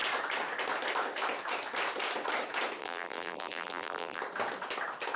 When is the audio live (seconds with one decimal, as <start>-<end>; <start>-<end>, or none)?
0.0-2.8; 4.2-5.2